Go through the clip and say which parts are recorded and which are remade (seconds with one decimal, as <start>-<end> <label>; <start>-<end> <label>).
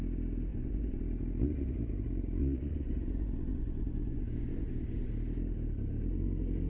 0.0-0.5 recorded; 0.5-1.0 remade; 1.0-2.4 recorded; 2.4-5.1 remade; 5.1-6.7 recorded